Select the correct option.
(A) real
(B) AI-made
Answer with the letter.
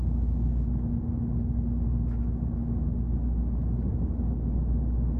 A